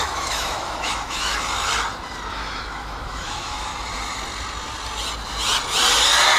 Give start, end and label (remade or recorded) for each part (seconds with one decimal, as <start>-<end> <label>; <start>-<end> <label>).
0.0-1.3 remade; 1.3-2.3 recorded; 2.3-3.7 remade; 3.7-6.4 recorded